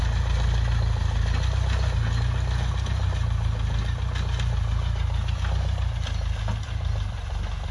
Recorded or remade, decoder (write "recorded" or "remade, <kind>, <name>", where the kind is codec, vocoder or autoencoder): recorded